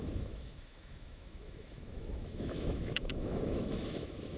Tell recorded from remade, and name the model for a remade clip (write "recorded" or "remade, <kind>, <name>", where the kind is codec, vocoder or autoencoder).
remade, autoencoder, DAC-VAE